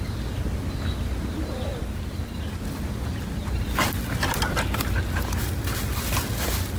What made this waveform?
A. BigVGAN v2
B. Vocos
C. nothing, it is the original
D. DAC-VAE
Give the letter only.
C